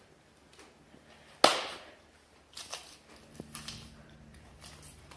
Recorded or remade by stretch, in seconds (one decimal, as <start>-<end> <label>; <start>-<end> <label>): 0.0-5.2 recorded